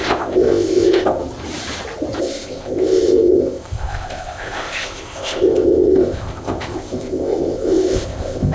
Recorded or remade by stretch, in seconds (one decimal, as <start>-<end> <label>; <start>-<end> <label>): 0.0-1.2 remade; 1.2-2.2 recorded; 2.2-8.5 remade